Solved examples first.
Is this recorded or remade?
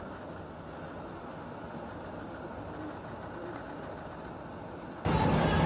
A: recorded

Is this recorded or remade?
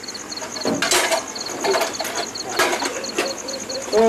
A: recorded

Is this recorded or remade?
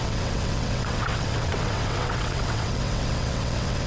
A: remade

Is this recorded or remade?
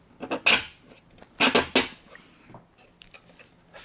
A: recorded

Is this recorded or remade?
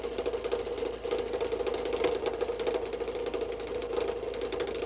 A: recorded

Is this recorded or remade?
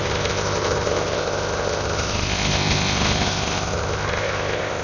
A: remade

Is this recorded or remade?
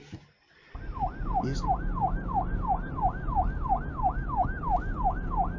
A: recorded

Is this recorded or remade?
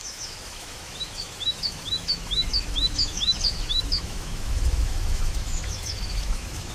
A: remade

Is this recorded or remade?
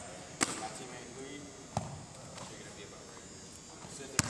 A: recorded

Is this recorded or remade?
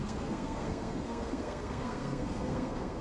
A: remade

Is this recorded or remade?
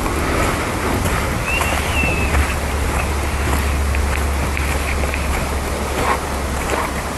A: remade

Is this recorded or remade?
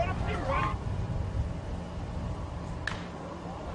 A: recorded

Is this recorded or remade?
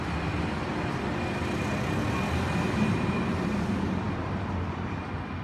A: remade